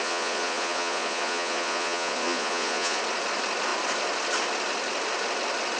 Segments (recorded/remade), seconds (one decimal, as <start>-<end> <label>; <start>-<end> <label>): 0.0-3.0 remade; 3.0-5.8 recorded